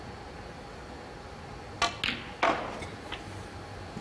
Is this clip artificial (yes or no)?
no